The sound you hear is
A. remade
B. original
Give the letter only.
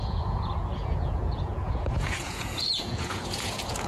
A